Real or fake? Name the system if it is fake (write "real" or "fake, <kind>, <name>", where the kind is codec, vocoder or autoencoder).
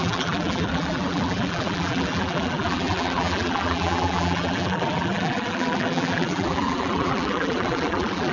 fake, vocoder, BigVGAN v2